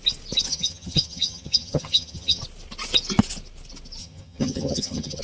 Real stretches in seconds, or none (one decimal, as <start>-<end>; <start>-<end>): 0.0-0.5; 2.4-4.0